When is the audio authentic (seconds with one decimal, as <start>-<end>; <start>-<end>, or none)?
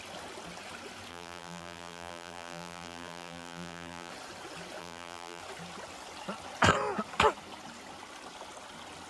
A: 0.0-1.1; 4.1-4.8; 5.4-9.1